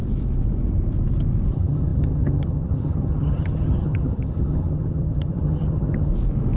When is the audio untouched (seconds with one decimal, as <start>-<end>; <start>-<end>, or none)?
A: 0.0-1.5; 6.1-6.6